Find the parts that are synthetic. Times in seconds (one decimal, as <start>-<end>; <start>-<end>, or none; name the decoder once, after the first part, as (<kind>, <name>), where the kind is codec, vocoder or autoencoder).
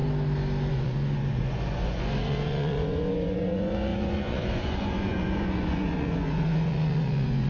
0.7-7.5 (vocoder, Vocos)